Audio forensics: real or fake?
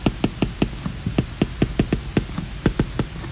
real